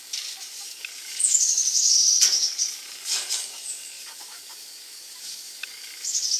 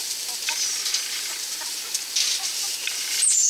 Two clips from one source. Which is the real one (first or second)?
second